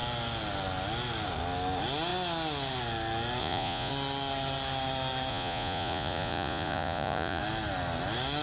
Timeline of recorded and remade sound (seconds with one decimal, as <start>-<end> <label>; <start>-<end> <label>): 0.0-3.4 recorded; 3.4-3.9 remade; 3.9-5.3 recorded; 5.3-7.4 remade; 7.4-8.4 recorded